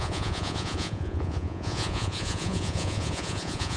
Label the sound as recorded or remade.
remade